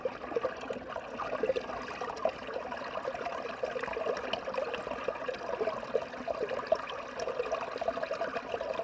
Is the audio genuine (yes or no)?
yes